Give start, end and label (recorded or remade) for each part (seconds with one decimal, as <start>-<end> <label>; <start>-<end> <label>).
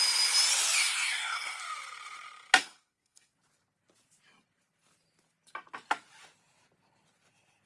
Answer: 0.0-0.8 recorded; 0.8-1.6 remade; 1.6-2.6 recorded; 2.6-3.3 remade; 3.3-7.7 recorded